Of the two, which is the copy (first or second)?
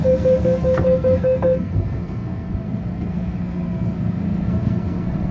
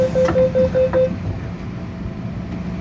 first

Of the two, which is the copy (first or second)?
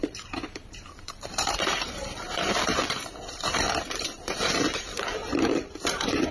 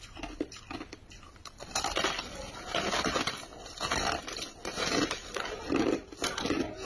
first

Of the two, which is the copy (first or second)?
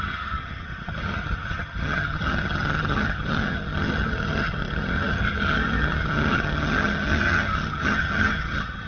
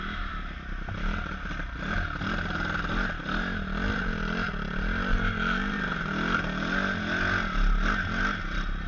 first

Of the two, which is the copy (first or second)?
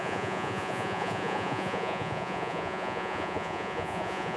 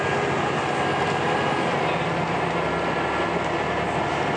first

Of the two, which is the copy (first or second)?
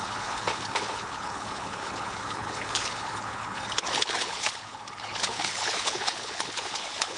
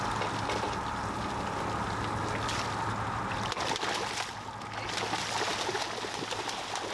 first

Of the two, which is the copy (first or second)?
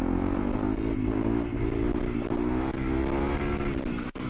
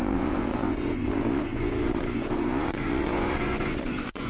second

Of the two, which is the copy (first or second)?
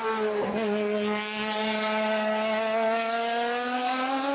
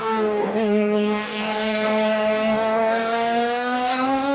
second